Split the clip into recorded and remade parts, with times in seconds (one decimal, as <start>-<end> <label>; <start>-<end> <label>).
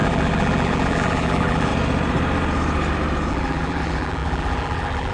0.0-1.7 remade; 1.7-3.3 recorded; 3.3-5.1 remade